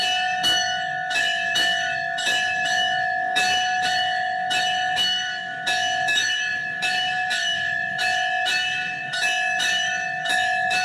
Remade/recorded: remade